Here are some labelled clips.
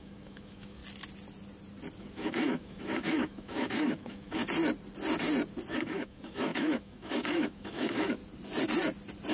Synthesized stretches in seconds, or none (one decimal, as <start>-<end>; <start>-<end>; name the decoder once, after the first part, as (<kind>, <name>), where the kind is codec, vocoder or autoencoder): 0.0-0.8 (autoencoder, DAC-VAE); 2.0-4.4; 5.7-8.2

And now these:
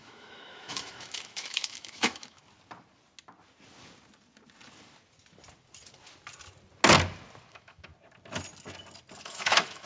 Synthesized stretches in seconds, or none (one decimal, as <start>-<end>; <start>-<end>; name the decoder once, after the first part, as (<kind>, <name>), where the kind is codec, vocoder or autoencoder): 0.0-2.4 (autoencoder, DAC-VAE); 7.5-7.9; 9.2-9.9

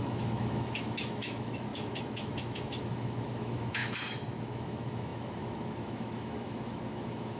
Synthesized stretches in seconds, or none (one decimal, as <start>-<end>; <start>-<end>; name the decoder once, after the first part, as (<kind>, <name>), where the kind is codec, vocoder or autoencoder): 0.0-7.4 (autoencoder, DAC-VAE)